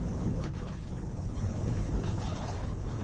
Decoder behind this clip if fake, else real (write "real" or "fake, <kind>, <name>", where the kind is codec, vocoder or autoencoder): fake, codec, HILCodec